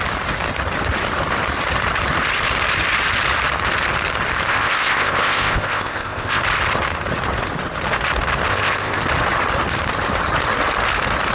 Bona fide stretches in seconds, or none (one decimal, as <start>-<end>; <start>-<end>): 0.0-4.5; 6.4-8.5; 9.0-11.3